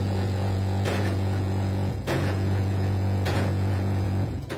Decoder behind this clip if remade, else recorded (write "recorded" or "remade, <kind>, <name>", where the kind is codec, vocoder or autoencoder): remade, vocoder, Vocos